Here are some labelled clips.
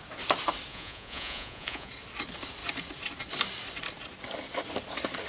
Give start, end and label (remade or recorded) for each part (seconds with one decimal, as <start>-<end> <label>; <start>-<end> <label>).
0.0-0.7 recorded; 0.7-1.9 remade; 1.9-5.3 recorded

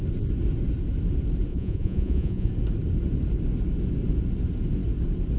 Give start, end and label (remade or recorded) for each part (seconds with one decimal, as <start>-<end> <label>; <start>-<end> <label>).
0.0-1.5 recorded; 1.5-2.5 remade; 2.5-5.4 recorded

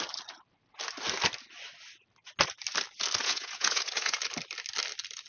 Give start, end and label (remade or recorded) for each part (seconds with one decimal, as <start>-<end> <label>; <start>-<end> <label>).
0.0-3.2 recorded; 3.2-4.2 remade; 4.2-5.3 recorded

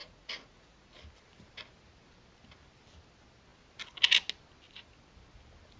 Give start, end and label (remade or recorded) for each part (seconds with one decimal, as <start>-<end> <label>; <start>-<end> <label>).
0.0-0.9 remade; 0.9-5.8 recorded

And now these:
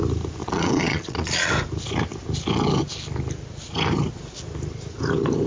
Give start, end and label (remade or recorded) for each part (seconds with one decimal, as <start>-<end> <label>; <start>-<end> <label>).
0.0-0.4 recorded; 0.4-1.5 remade; 1.5-5.5 recorded

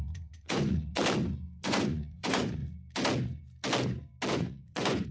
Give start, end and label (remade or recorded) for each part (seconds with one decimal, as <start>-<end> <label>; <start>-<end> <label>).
0.0-1.0 remade; 1.0-1.6 recorded; 1.6-2.6 remade; 2.6-4.3 recorded; 4.3-5.1 remade

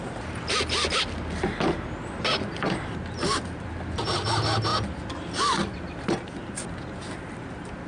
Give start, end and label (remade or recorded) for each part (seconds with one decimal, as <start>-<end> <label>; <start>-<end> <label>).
0.0-7.9 recorded